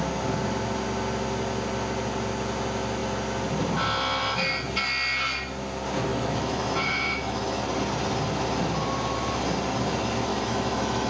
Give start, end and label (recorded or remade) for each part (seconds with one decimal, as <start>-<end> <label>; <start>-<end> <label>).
0.0-6.1 recorded; 6.1-7.6 remade; 7.6-10.3 recorded; 10.3-11.1 remade